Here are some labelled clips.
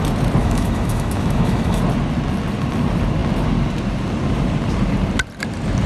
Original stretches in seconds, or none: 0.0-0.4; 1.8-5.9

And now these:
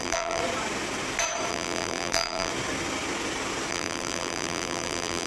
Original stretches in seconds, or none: 0.4-1.5; 2.5-3.7

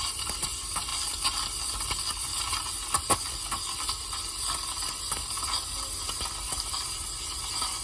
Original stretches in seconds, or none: 0.0-7.8

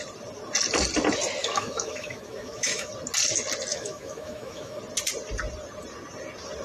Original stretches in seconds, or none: 0.0-1.4; 2.9-3.7; 4.8-6.6

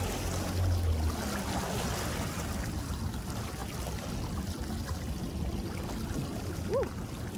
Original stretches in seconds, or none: 0.0-3.6; 4.1-7.4

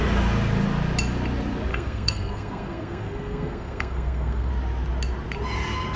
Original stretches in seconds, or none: 0.0-1.7; 4.5-6.0

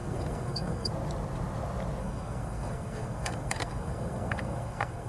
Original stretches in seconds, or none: 0.9-2.0